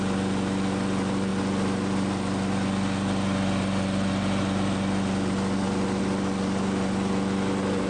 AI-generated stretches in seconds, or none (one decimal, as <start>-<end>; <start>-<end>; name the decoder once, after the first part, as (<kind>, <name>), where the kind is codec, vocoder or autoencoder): none